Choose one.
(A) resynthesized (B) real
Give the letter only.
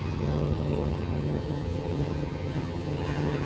A